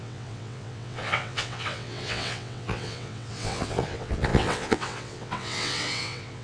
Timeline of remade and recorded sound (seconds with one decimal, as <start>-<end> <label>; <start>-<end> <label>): 0.0-6.4 remade